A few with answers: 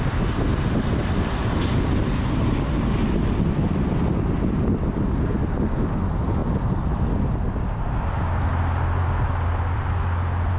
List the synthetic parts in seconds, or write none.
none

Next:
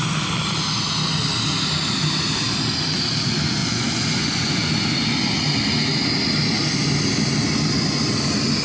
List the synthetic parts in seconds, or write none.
3.6-4.7 (vocoder, Vocos)

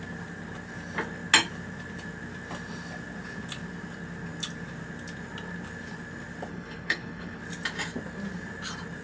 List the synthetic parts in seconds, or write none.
6.5-7.4 (codec, HILCodec)

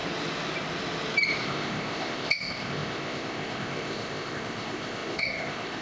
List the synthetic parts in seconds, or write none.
1.4-5.8 (codec, ZipCodec)